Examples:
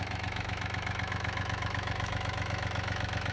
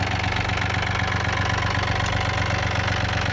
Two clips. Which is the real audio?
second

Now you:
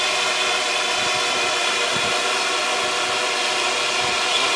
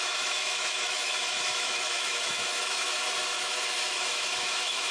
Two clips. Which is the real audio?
first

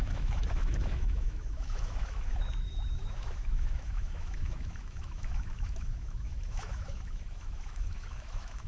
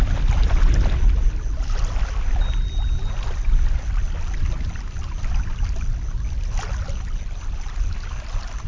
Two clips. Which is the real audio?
second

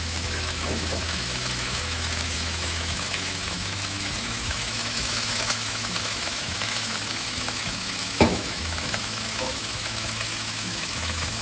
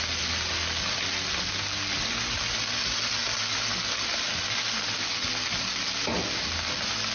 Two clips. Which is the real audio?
second